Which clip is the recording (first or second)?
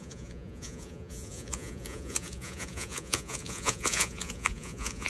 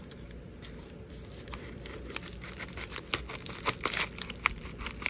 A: second